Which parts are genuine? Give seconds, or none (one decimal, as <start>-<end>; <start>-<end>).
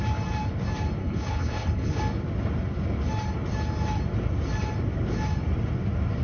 0.0-1.0; 2.0-6.2